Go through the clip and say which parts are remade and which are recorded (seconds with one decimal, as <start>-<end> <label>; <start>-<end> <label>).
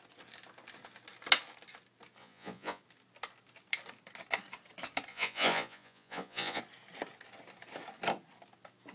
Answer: 0.0-2.2 recorded; 2.2-2.8 remade; 2.8-5.1 recorded; 5.1-6.6 remade; 6.6-8.9 recorded